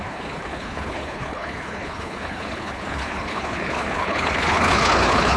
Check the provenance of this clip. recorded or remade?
remade